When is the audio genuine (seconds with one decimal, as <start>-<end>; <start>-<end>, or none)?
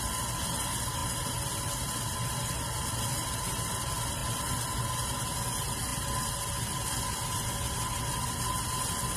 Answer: 0.0-9.2